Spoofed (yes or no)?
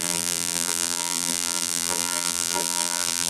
yes